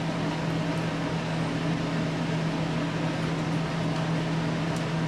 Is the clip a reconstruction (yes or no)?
no